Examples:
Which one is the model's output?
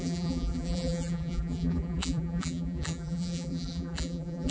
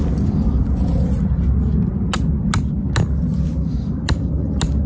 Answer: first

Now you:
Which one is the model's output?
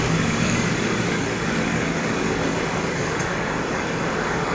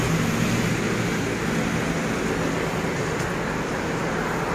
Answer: first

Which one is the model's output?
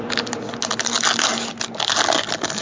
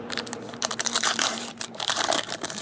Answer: second